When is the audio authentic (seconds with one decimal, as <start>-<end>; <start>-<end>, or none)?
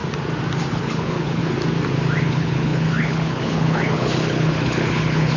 0.0-0.7; 1.4-2.2